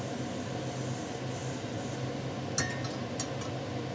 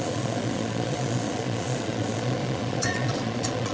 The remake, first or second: second